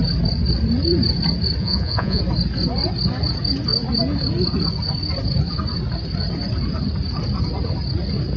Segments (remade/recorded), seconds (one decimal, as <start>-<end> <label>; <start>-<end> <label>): 0.0-1.6 recorded; 1.6-2.2 remade; 2.2-8.4 recorded